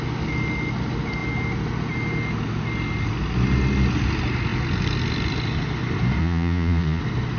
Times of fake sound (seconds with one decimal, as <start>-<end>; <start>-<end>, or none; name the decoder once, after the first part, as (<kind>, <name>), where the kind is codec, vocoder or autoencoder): 6.2-7.0 (vocoder, Vocos)